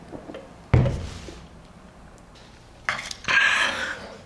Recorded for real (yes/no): yes